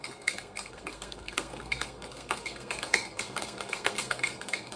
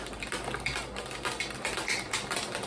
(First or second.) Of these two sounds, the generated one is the first